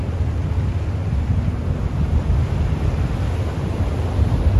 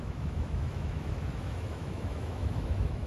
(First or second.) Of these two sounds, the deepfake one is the second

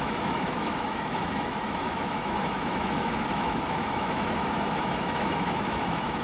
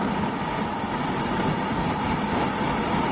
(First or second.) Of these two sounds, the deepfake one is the first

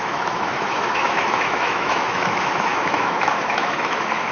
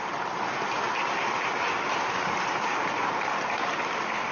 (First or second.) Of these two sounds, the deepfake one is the first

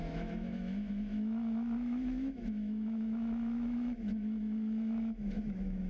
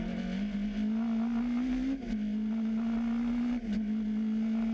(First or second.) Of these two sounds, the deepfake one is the first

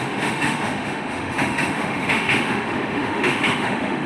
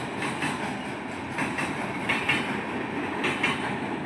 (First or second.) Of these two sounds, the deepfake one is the first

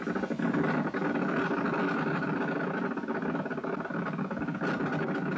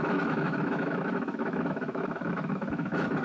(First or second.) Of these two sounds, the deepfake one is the second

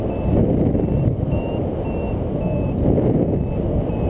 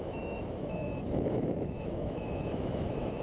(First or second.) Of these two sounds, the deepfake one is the second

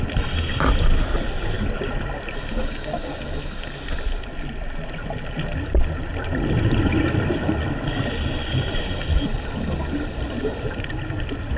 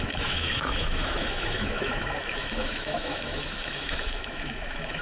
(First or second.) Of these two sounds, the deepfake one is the second